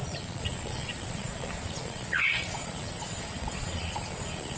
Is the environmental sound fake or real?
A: fake